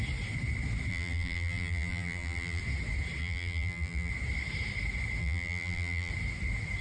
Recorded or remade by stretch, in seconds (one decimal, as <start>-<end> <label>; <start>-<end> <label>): 0.0-0.9 recorded; 0.9-2.6 remade; 2.6-3.2 recorded; 3.2-4.1 remade; 4.1-5.2 recorded; 5.2-6.1 remade; 6.1-6.8 recorded